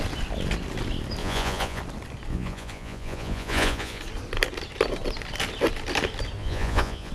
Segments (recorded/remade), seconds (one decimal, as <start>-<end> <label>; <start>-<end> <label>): 0.0-1.2 recorded; 1.2-1.8 remade; 1.8-2.3 recorded; 2.3-4.0 remade; 4.0-6.4 recorded; 6.4-7.1 remade